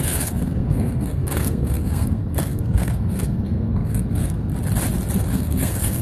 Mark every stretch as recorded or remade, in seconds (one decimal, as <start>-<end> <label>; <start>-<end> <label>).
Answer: 0.0-4.5 remade; 4.5-5.2 recorded; 5.2-6.0 remade